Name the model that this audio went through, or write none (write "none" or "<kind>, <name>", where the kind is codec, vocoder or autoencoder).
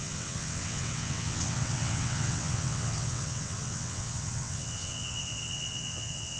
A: vocoder, WaveNeXt